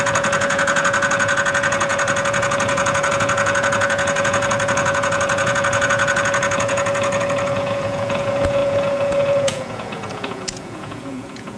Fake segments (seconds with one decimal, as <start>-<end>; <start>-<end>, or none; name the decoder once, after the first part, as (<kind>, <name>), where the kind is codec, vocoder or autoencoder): 0.0-11.6 (vocoder, Vocos)

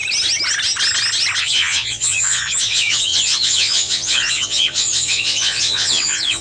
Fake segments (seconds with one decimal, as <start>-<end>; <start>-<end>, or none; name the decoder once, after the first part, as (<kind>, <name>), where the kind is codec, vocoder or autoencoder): 1.4-6.4 (vocoder, Vocos)

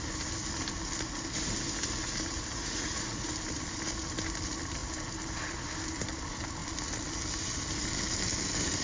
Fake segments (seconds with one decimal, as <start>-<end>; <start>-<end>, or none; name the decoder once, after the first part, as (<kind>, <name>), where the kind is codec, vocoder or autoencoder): 2.5-3.3 (vocoder, Vocos)

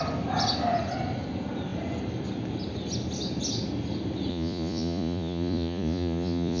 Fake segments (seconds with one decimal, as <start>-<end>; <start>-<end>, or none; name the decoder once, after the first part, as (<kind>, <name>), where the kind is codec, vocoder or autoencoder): 4.3-6.6 (vocoder, Vocos)

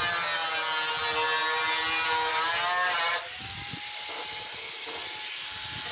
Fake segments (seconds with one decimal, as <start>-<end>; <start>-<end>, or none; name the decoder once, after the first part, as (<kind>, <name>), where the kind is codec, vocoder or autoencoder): none

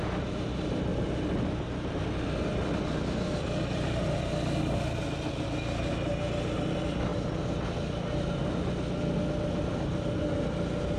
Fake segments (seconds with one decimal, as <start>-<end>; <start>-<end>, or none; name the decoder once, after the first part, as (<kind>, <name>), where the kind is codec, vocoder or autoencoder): none